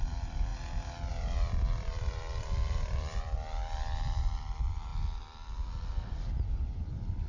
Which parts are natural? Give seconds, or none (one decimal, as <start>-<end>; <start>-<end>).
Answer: 0.5-1.1